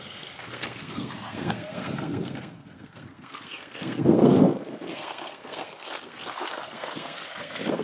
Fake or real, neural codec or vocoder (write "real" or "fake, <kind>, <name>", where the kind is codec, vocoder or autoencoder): fake, codec, SNAC